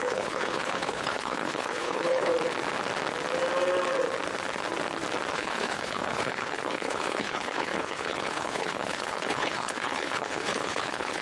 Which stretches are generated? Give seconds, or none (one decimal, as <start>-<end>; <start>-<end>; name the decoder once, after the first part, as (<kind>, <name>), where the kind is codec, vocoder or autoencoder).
0.0-2.3 (codec, HILCodec); 5.3-11.2